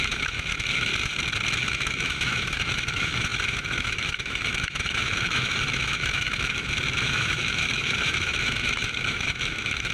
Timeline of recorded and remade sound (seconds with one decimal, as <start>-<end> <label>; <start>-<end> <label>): 0.0-0.9 remade; 0.9-1.5 recorded; 1.5-9.9 remade